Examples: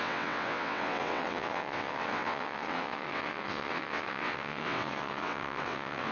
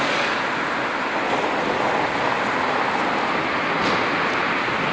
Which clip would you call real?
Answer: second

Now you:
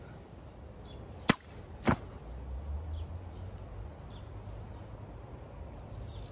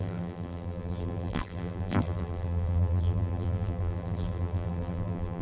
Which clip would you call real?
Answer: first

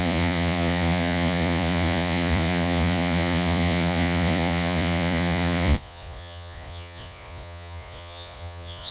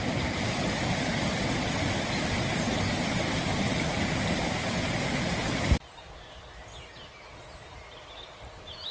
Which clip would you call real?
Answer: second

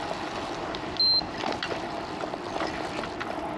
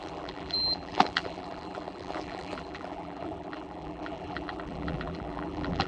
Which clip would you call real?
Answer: first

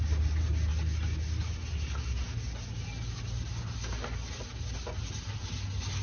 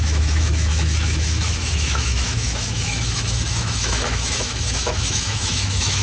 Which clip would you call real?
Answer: first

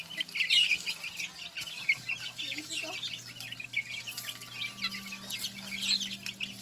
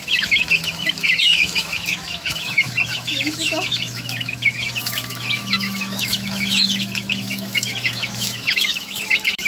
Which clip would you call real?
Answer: first